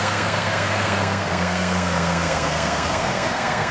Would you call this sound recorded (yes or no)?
no